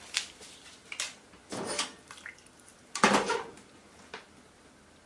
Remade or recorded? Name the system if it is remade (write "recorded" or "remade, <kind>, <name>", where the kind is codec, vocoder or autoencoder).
recorded